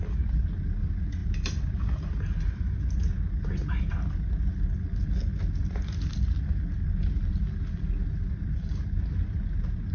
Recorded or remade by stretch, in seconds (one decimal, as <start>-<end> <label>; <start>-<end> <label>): 0.0-9.9 recorded

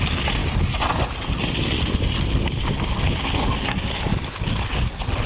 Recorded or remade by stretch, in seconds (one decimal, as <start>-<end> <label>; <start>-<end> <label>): 0.0-5.3 recorded

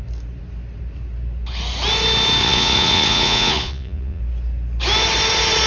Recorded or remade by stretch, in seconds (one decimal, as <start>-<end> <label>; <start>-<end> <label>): 0.0-2.4 recorded; 2.4-4.2 remade; 4.2-5.7 recorded

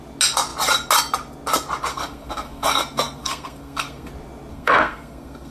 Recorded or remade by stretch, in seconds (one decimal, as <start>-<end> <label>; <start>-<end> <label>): 0.0-1.9 recorded; 1.9-4.1 remade; 4.1-4.5 recorded; 4.5-5.5 remade

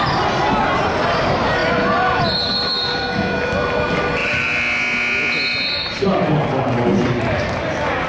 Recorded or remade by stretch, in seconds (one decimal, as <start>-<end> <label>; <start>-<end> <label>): 0.0-8.1 recorded

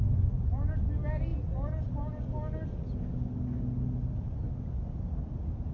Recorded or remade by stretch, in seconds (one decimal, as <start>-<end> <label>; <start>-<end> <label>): 0.0-5.7 recorded